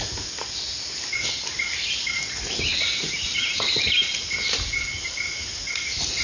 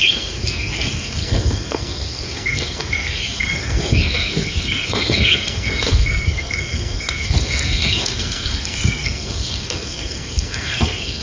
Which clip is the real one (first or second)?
first